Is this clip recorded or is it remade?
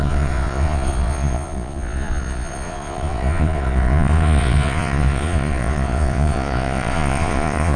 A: remade